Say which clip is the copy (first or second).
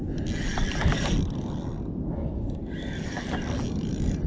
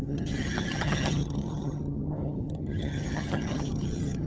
second